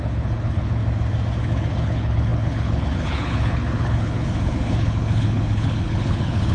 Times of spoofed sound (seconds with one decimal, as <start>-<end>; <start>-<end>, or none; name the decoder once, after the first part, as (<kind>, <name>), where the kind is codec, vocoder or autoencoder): 0.0-0.8 (codec, HILCodec); 1.4-6.5